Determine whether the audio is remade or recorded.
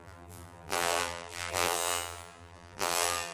remade